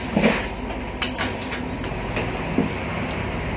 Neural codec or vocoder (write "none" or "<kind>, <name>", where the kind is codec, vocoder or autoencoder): none